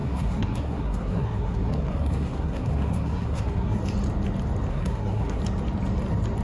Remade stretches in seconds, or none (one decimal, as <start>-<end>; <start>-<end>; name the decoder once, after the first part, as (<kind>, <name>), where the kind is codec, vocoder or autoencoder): 0.0-3.8 (codec, SNAC); 4.7-5.4